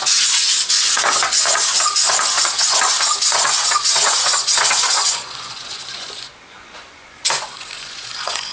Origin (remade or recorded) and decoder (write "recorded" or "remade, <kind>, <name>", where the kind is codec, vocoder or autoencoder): remade, vocoder, Vocos